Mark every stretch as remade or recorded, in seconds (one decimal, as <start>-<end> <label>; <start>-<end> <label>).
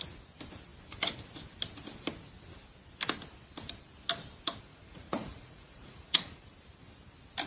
0.0-4.7 recorded; 4.7-6.4 remade; 6.4-7.5 recorded